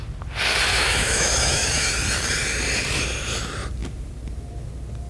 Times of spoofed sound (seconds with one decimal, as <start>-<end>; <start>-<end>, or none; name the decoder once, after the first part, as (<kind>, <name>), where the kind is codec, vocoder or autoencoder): 0.7-1.9 (autoencoder, DAC-VAE)